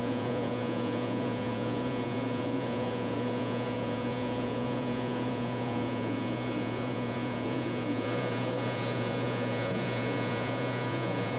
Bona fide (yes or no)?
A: no